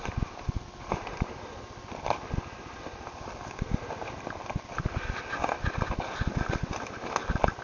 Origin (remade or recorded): recorded